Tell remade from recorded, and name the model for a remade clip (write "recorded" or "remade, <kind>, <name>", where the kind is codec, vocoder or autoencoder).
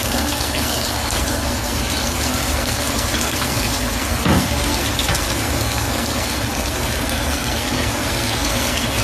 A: remade, codec, SNAC